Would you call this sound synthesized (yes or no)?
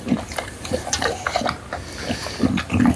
no